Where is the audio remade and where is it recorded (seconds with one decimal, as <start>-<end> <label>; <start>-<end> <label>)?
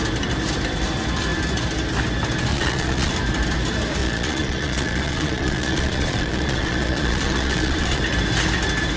0.0-2.5 recorded; 2.5-3.1 remade; 3.1-4.0 recorded; 4.0-8.0 remade; 8.0-9.0 recorded